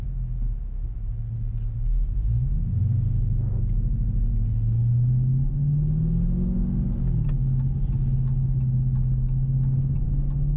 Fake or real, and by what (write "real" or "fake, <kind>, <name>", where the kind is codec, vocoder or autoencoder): real